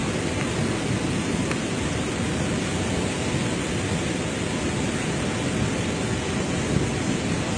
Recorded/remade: recorded